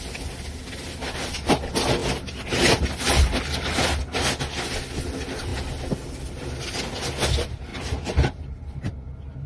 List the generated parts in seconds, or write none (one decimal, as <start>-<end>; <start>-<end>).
7.7-9.5